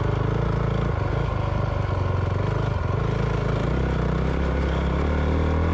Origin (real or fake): real